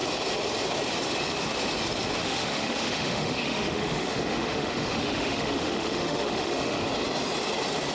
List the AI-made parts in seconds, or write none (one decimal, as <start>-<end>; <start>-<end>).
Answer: 2.2-6.8